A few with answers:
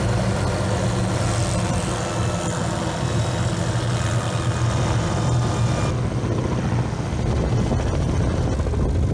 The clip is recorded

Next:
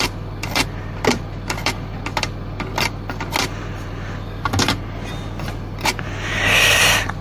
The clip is recorded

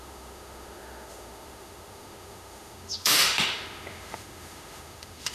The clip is remade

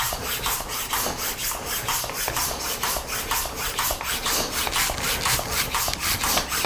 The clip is recorded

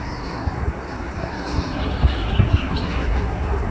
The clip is remade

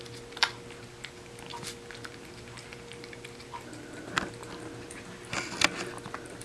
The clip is recorded